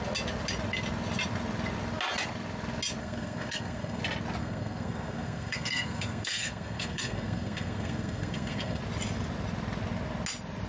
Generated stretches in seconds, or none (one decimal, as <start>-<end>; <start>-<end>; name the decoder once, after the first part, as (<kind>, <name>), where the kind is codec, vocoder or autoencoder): 3.0-4.0 (codec, SNAC); 4.4-8.8